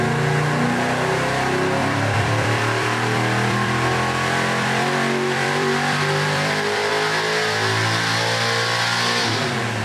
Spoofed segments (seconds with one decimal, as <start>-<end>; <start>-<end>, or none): 1.8-6.9